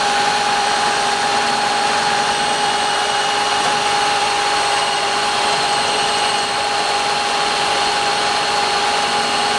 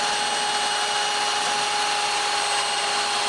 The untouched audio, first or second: second